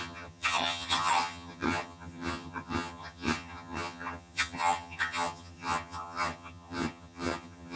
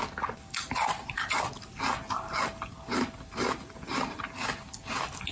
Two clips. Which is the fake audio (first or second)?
first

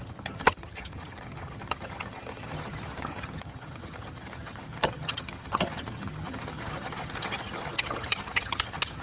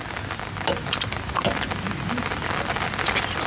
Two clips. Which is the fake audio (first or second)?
first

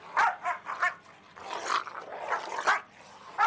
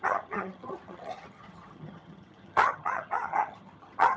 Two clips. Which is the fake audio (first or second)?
second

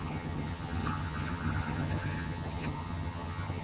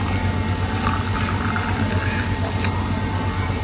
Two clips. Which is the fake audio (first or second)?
first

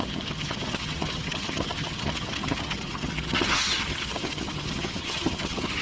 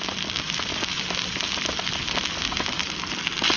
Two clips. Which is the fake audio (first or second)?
first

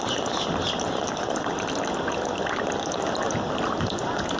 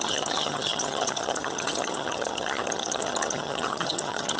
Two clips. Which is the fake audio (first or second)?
second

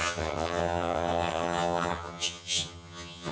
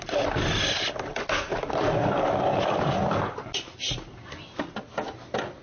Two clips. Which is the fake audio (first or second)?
first